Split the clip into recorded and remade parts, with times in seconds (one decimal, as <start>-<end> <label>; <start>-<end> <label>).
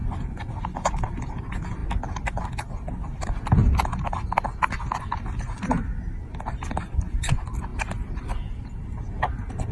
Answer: 0.0-9.7 recorded